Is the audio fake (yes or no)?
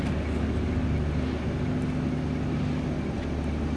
no